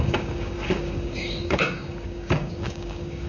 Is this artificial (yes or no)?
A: yes